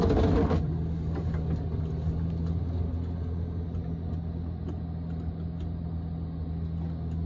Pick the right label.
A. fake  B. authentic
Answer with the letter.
B